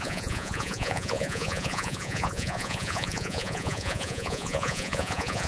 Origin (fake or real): fake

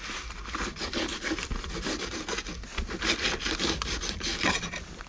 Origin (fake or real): real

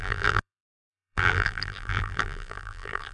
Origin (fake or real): fake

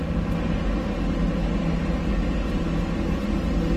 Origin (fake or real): real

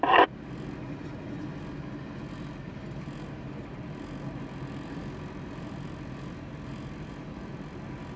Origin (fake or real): real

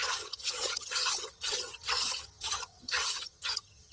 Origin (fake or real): fake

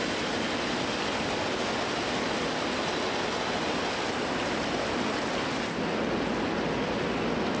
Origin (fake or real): real